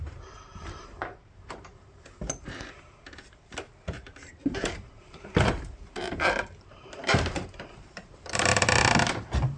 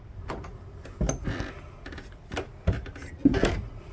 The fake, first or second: first